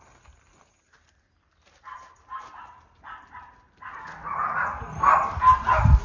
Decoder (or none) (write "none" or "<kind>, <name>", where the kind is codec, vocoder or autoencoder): none